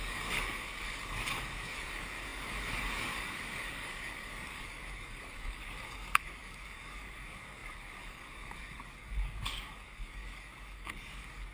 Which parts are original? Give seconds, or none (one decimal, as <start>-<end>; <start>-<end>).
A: none

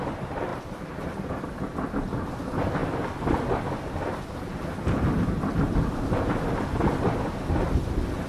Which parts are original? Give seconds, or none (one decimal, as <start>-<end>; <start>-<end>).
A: 0.0-8.3

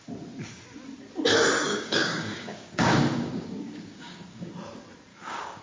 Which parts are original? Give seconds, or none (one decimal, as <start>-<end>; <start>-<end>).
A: 0.0-1.7; 4.5-5.1

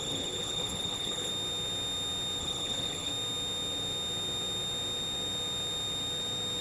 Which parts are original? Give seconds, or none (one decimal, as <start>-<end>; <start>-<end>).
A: 1.3-2.4; 3.1-6.6

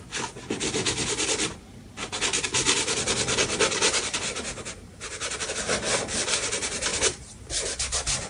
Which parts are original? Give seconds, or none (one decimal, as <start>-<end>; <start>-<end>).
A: 0.0-8.3

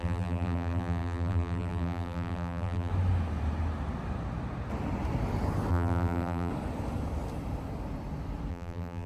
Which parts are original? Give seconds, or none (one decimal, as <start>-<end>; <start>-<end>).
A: 2.9-5.7; 6.5-8.5

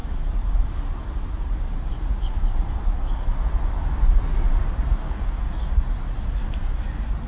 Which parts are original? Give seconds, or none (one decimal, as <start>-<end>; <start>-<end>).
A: 0.0-5.0; 5.5-7.3